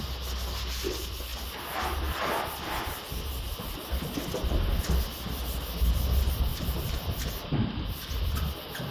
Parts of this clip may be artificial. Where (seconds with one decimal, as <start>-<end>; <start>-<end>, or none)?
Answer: 6.5-8.4

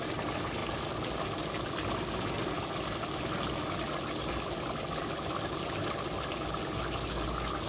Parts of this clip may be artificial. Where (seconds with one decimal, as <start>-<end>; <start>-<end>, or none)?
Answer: none

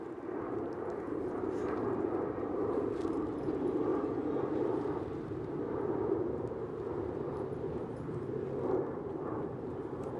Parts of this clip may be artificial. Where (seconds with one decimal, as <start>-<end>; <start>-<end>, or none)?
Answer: 0.0-3.9; 4.4-10.2

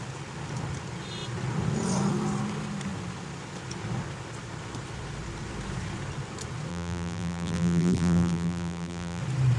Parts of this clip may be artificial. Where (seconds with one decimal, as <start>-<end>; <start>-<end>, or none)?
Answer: 6.7-9.2

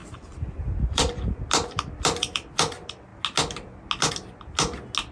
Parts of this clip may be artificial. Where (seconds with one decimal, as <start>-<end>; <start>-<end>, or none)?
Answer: 0.0-1.4

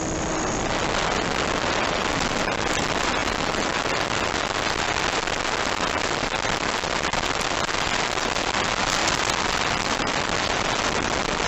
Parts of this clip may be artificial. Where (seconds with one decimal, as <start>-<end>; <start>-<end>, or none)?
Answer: none

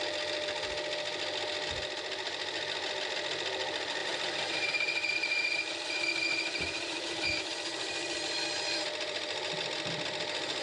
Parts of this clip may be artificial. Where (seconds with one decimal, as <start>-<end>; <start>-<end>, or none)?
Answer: 4.0-4.7; 6.3-7.5